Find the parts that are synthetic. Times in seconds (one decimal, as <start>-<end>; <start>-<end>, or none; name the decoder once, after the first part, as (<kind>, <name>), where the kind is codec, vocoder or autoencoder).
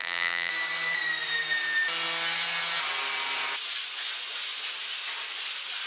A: 0.0-0.5 (vocoder, BigVGAN v2)